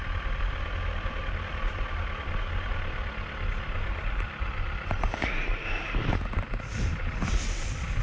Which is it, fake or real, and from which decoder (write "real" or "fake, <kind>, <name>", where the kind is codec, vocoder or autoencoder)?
real